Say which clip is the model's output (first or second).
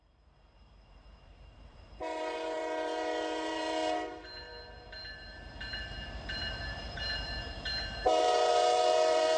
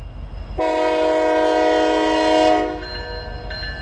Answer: first